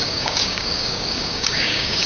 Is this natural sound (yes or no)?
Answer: no